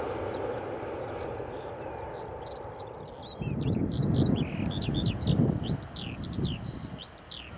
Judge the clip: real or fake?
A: real